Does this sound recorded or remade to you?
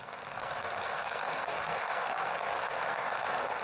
remade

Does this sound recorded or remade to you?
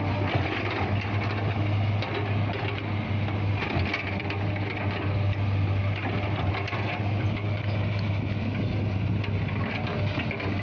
recorded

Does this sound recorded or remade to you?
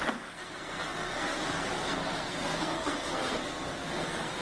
remade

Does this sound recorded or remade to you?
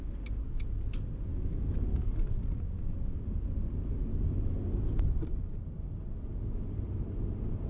recorded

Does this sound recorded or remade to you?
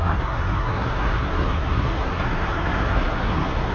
remade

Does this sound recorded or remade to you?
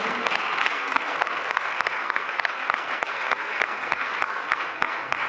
remade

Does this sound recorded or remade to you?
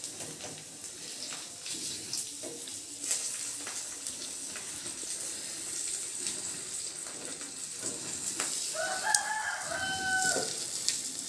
recorded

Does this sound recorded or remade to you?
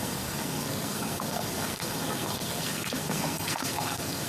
remade